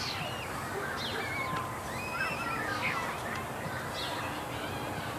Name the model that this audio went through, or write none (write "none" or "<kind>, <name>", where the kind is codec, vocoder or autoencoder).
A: none